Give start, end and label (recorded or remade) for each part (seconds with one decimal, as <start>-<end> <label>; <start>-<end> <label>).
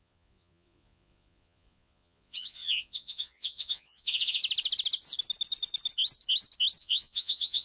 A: 0.0-4.4 remade; 4.4-6.8 recorded; 6.8-7.6 remade